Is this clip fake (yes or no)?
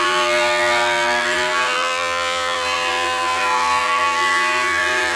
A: yes